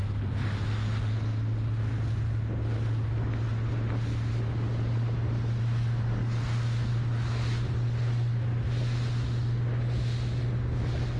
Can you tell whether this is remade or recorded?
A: recorded